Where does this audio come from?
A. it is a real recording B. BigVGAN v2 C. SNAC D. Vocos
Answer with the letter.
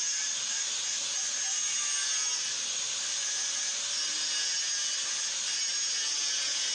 A